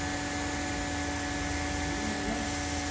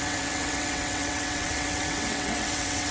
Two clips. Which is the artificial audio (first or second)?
second